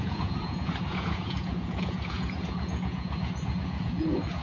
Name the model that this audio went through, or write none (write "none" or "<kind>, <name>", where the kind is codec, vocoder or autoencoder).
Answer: vocoder, Vocos